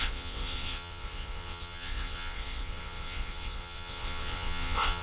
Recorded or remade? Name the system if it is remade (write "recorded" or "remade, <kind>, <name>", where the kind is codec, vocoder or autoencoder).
remade, vocoder, WaveNeXt